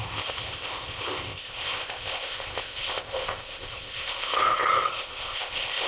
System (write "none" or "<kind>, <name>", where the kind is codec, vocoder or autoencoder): codec, ZipCodec